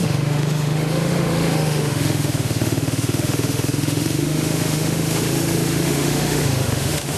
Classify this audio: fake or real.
fake